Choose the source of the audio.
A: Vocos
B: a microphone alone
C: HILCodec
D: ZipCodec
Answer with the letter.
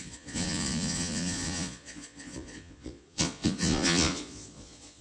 A